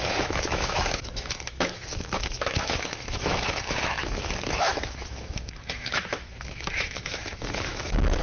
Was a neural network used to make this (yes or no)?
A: yes